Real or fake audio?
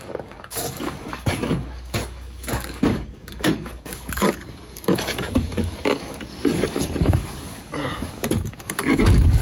fake